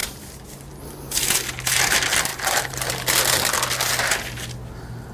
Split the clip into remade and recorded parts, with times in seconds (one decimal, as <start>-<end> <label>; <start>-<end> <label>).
0.0-2.3 recorded; 2.3-2.9 remade; 2.9-5.1 recorded